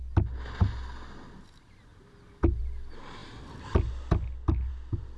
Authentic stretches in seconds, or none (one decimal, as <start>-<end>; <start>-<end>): 0.0-1.9; 2.6-5.2